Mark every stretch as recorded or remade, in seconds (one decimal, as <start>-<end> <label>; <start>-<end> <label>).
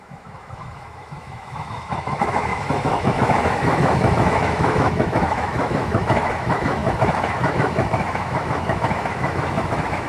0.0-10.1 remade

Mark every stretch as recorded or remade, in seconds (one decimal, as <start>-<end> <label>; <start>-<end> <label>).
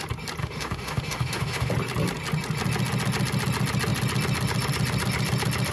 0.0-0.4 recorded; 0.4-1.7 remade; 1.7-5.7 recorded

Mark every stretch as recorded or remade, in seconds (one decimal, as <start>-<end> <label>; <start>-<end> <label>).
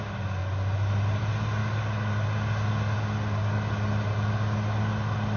0.0-5.4 recorded